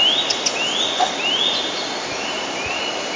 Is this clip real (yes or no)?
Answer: yes